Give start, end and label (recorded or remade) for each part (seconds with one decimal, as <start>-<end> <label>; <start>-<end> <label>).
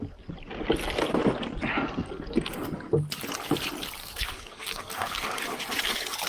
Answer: 0.0-4.0 recorded; 4.0-5.4 remade; 5.4-6.3 recorded